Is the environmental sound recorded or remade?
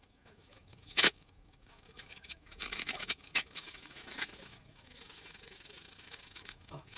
remade